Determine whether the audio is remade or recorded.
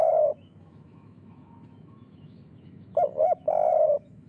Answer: remade